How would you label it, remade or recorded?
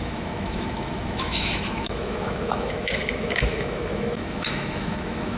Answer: remade